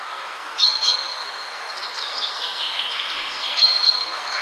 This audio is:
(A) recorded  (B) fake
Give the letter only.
B